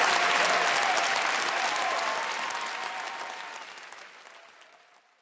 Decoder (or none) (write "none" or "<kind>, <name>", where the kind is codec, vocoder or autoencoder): none